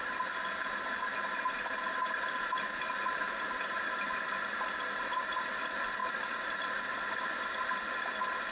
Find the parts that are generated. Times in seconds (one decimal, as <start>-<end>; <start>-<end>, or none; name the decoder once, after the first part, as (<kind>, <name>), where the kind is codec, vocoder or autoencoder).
none